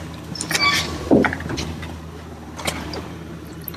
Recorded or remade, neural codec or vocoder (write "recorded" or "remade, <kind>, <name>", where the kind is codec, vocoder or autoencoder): remade, vocoder, BigVGAN v2